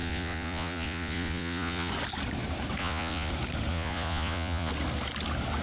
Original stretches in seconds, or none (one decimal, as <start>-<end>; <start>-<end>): 1.9-2.8; 3.3-3.7; 4.7-5.6